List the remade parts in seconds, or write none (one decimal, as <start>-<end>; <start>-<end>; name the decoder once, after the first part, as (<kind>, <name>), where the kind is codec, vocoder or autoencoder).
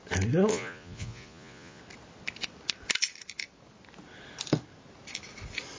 0.5-1.8 (vocoder, Vocos)